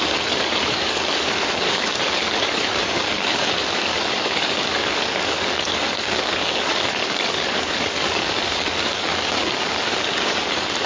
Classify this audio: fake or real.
fake